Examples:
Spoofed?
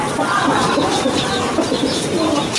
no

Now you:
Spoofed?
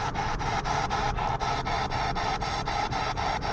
no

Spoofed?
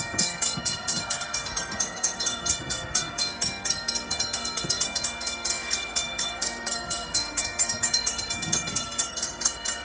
yes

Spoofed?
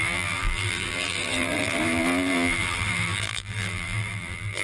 yes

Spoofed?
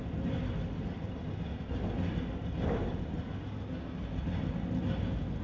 no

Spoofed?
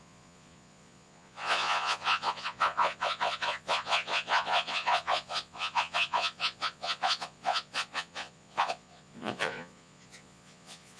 yes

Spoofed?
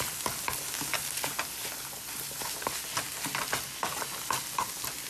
no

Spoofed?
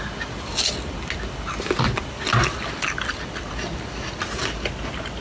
no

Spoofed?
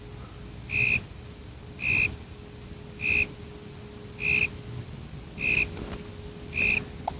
no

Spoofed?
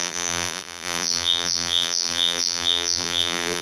yes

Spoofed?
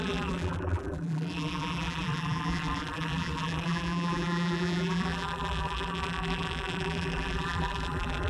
yes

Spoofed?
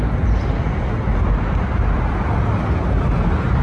no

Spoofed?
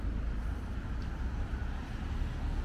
no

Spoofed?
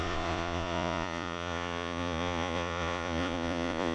yes